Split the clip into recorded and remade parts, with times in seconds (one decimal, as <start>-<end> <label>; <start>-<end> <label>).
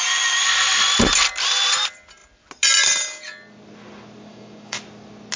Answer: 0.0-4.3 recorded; 4.3-4.8 remade; 4.8-5.4 recorded